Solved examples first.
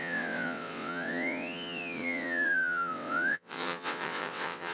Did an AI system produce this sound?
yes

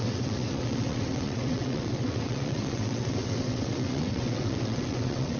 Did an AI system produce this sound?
yes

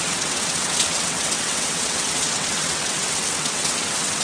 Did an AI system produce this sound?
yes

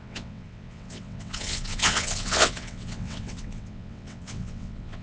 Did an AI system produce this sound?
yes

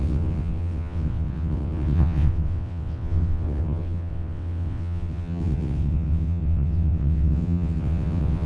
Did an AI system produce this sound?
yes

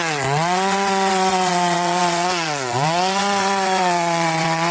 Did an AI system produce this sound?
yes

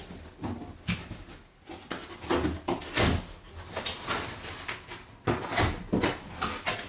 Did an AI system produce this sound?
no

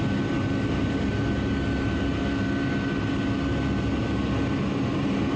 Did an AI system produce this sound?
no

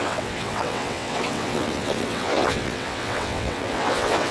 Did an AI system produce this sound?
yes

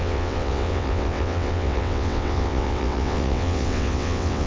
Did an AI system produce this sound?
yes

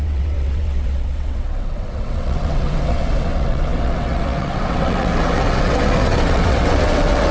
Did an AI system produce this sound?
yes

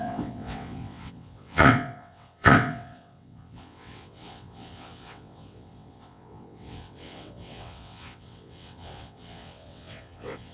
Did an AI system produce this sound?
yes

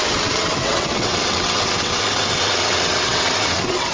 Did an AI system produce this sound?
yes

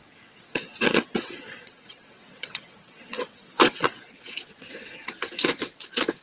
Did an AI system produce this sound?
yes